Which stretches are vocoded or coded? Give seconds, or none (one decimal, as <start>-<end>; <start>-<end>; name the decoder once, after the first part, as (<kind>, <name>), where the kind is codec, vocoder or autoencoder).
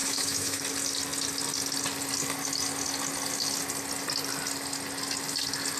0.0-0.6 (autoencoder, DAC-VAE)